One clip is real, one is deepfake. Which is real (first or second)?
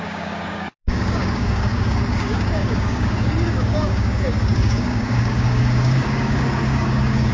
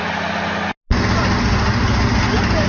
second